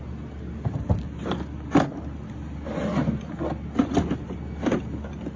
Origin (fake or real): real